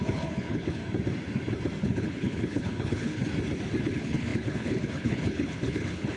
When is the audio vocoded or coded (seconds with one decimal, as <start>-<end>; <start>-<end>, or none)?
0.0-0.8; 1.8-3.2; 3.8-6.2